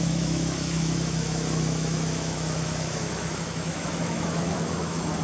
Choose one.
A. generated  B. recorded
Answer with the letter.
A